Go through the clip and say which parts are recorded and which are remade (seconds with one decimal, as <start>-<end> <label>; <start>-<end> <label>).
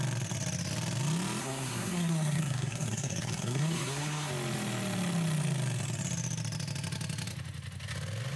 0.0-1.4 recorded; 1.4-4.3 remade; 4.3-8.4 recorded